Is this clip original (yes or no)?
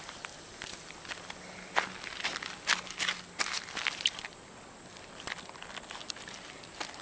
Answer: yes